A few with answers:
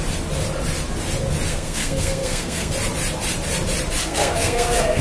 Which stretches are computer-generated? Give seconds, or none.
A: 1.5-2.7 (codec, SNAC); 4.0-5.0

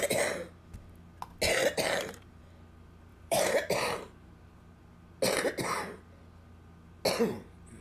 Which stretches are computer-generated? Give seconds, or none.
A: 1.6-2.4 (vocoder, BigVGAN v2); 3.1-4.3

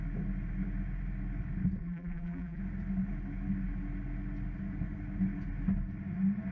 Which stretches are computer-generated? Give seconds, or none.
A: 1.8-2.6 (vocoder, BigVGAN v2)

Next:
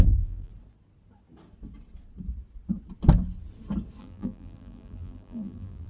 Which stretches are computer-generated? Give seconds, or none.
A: 0.0-0.5 (vocoder, BigVGAN v2); 4.0-5.9

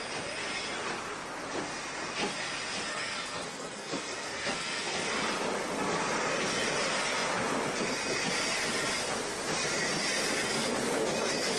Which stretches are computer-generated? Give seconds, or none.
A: 2.9-5.1 (codec, SNAC)